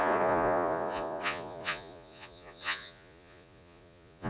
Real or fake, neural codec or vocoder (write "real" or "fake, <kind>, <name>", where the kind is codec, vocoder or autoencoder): fake, vocoder, Vocos